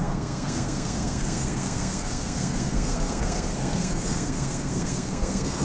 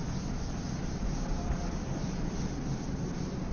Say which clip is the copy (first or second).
first